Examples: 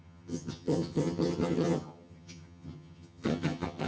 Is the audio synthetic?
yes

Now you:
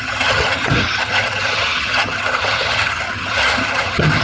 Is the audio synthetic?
yes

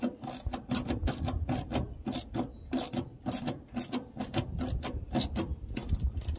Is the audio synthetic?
no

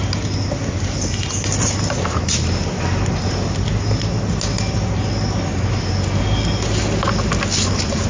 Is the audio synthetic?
no